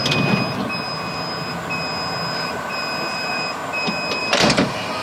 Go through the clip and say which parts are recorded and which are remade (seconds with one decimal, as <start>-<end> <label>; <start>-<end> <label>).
0.0-2.4 recorded; 2.4-3.6 remade; 3.6-4.2 recorded; 4.2-5.0 remade